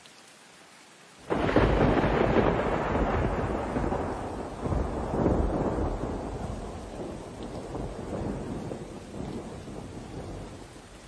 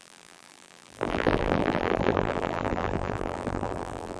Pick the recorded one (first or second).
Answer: first